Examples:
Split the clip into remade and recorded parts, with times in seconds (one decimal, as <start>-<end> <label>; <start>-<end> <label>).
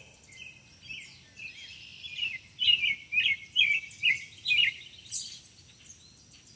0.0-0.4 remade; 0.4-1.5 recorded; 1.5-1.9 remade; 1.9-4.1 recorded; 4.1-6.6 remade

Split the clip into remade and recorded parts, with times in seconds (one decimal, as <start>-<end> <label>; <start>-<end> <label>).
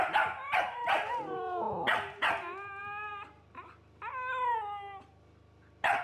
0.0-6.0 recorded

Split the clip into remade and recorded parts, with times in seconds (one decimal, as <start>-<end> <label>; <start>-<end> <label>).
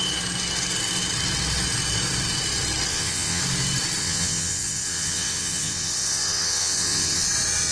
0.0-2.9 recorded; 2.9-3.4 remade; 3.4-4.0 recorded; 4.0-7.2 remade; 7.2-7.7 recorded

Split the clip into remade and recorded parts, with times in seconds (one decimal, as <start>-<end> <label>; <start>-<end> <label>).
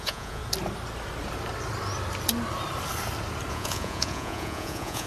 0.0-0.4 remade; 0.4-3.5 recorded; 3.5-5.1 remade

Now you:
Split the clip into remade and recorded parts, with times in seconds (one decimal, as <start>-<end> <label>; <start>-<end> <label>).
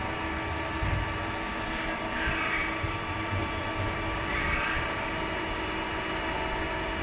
0.0-2.6 recorded; 2.6-5.7 remade; 5.7-7.0 recorded